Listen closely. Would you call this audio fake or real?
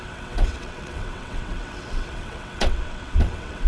fake